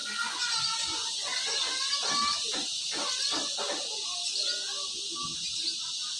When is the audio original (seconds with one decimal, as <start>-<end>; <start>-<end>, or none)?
1.6-6.2